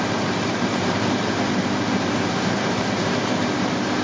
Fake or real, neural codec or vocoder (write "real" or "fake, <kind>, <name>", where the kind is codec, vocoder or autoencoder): fake, vocoder, BigVGAN v2